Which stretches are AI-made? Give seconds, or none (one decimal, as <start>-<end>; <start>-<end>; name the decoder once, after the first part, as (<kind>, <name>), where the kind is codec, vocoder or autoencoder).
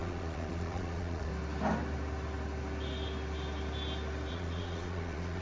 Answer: 0.0-1.3 (vocoder, Vocos); 4.3-5.4